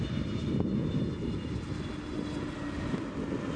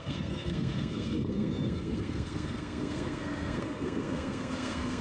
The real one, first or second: first